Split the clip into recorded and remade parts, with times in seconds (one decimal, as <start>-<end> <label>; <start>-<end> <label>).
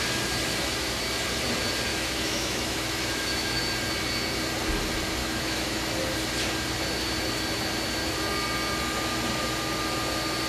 0.0-1.9 recorded; 1.9-3.6 remade; 3.6-5.2 recorded; 5.2-5.8 remade; 5.8-10.5 recorded